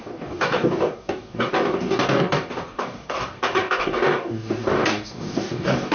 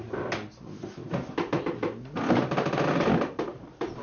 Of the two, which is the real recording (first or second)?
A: second